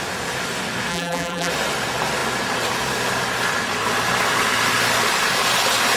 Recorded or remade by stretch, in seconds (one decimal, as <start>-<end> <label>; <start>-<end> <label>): 0.0-0.9 recorded; 0.9-1.5 remade; 1.5-6.0 recorded